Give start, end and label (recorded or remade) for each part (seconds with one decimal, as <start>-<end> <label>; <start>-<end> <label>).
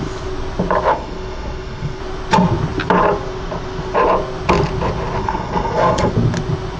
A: 0.0-0.9 recorded; 0.9-2.0 remade; 2.0-5.2 recorded; 5.2-6.1 remade; 6.1-6.8 recorded